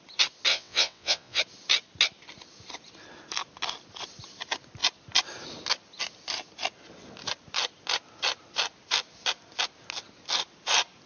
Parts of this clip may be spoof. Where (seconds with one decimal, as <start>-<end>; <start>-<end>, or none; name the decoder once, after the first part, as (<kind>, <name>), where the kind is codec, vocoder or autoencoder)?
0.5-1.4 (vocoder, WaveNeXt)